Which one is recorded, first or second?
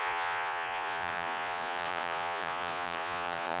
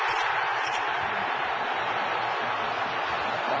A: second